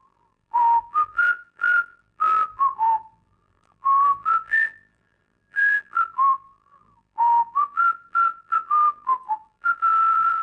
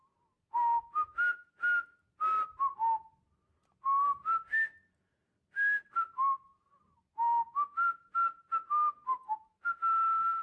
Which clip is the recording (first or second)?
second